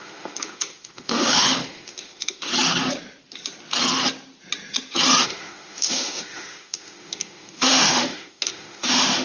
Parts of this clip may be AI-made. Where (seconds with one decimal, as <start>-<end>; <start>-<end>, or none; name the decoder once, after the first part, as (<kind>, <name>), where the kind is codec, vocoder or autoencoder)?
0.0-2.5 (autoencoder, DAC-VAE); 5.2-9.2